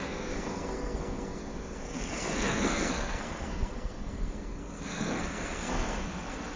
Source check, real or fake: fake